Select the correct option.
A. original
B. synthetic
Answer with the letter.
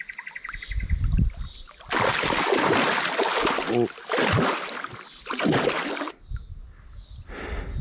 A